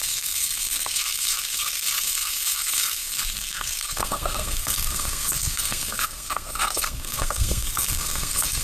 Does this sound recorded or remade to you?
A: remade